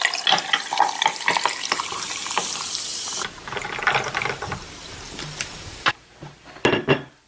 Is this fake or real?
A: real